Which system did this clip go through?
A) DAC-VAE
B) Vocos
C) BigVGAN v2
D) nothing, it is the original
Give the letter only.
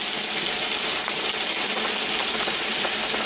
D